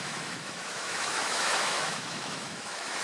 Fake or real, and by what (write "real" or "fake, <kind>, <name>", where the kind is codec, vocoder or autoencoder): fake, autoencoder, DAC-VAE